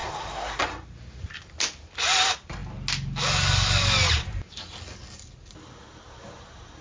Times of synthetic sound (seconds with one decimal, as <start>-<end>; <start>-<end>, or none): 0.0-0.6